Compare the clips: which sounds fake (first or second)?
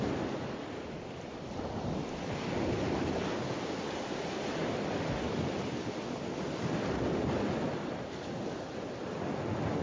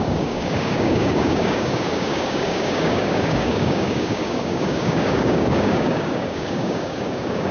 second